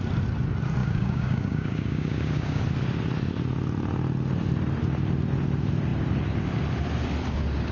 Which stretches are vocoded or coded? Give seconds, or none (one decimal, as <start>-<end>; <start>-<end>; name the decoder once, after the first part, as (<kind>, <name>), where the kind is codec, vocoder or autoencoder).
0.8-2.6 (codec, DAC)